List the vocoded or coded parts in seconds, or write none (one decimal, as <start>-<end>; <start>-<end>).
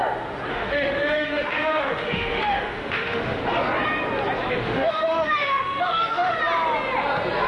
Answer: 0.5-3.4; 4.5-6.4